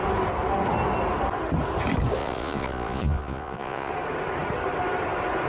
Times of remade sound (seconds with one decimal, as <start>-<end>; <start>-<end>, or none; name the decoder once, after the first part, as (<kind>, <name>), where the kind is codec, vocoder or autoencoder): 2.2-3.9 (vocoder, Vocos)